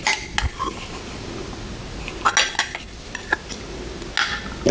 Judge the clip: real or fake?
real